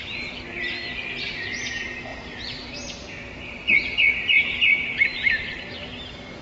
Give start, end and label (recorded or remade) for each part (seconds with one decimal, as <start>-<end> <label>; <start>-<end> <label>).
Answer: 0.0-2.1 recorded; 2.1-5.9 remade; 5.9-6.4 recorded